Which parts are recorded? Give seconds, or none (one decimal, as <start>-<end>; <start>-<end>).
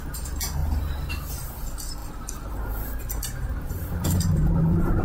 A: 0.0-0.6; 1.1-3.5